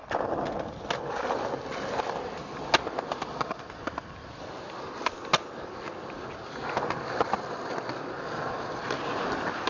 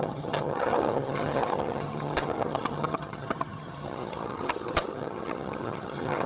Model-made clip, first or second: second